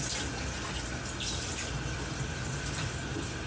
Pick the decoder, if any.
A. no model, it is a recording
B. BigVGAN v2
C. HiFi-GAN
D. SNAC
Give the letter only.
A